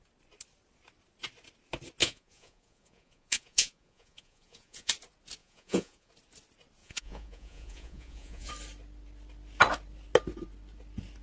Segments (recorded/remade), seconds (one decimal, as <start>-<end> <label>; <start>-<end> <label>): 0.0-2.0 recorded; 2.0-4.9 remade; 4.9-5.4 recorded; 5.4-6.1 remade; 6.1-6.8 recorded; 6.8-8.5 remade; 8.5-11.2 recorded